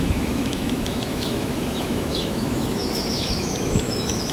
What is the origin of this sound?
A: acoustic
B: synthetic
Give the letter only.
B